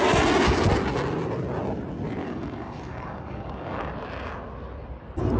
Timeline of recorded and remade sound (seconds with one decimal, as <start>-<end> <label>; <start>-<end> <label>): 0.0-2.2 recorded; 2.2-3.8 remade; 3.8-5.4 recorded